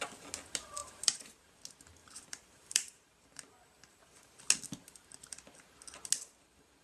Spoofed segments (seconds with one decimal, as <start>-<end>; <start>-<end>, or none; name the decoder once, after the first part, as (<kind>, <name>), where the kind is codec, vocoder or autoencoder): 0.8-1.4 (vocoder, BigVGAN v2); 2.0-4.2